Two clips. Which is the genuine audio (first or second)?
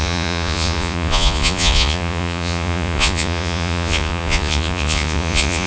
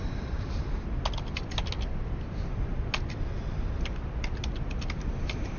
second